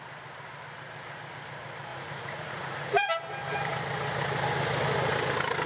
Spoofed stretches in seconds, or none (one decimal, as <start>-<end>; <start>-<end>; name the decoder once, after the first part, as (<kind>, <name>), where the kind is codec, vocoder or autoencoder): 1.9-3.1 (vocoder, Vocos)